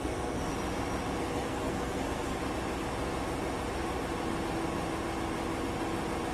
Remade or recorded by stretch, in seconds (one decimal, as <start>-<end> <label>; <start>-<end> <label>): 0.0-0.5 remade; 0.5-1.2 recorded; 1.2-2.4 remade; 2.4-6.3 recorded